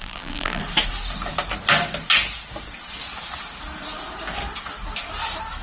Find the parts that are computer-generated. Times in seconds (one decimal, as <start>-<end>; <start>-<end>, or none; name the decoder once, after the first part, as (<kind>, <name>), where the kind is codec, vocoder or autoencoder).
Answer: 0.0-0.6 (vocoder, BigVGAN v2)